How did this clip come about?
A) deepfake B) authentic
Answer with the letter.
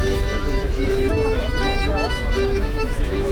A